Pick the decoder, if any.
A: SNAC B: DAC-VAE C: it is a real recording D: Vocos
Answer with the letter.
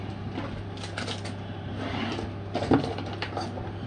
C